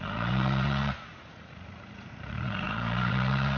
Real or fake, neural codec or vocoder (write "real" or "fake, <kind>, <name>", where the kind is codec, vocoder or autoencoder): fake, vocoder, Vocos